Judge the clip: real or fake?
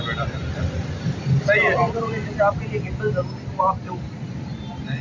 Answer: real